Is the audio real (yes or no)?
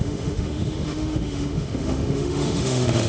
no